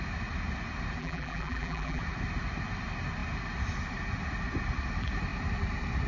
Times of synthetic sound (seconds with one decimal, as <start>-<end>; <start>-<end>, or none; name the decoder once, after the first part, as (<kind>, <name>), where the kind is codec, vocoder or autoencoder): 1.0-2.0 (vocoder, BigVGAN v2)